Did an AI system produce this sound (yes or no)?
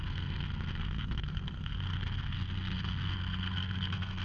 yes